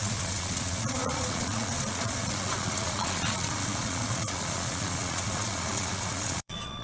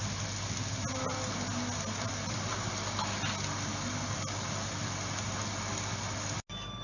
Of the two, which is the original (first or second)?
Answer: second